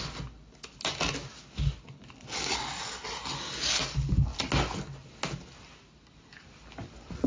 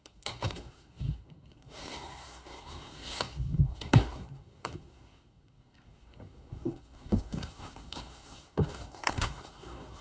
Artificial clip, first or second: second